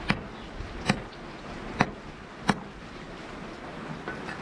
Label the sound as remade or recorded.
recorded